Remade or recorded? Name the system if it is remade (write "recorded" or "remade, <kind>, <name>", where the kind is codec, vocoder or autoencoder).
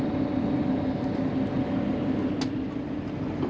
recorded